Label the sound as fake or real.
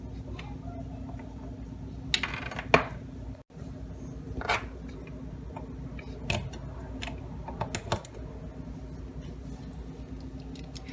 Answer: real